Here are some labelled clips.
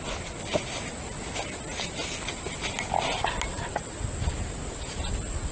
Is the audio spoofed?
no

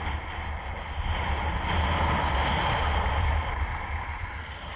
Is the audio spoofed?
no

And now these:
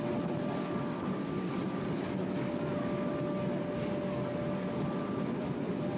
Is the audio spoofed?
no